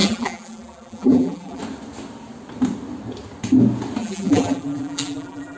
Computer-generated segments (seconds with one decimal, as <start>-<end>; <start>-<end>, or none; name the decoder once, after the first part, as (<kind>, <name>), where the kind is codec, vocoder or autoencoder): 0.0-1.6 (vocoder, BigVGAN v2); 4.0-5.6